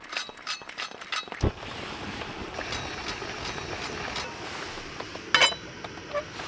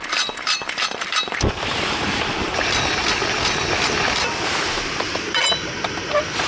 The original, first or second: first